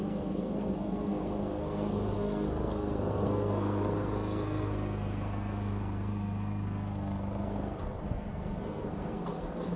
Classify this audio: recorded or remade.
remade